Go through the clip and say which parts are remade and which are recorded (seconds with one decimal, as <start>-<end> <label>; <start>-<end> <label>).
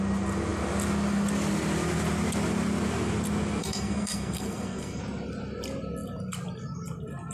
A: 0.0-3.6 recorded; 3.6-5.0 remade; 5.0-7.3 recorded